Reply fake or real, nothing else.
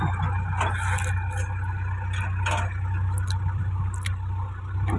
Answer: real